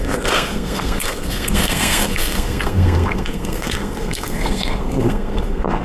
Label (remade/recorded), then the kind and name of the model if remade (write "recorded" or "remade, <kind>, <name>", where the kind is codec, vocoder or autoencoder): remade, codec, SNAC